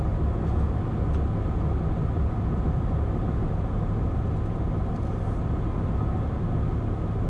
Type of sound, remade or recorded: recorded